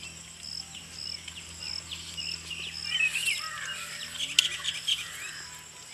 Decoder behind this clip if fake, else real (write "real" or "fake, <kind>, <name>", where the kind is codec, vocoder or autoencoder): real